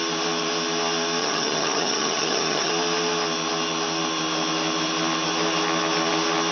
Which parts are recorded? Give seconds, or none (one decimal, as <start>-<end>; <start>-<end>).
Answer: 0.0-1.2; 2.7-6.5